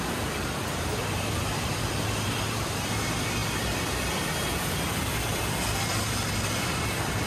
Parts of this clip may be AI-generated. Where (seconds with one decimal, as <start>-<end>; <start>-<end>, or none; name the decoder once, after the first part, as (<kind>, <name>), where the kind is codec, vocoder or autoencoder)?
0.0-7.3 (vocoder, BigVGAN v2)